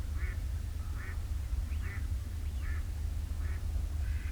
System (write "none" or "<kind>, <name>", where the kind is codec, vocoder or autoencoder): none